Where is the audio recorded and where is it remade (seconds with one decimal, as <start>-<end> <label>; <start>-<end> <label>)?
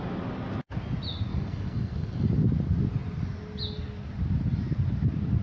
0.0-1.3 recorded; 1.3-2.3 remade; 2.3-5.4 recorded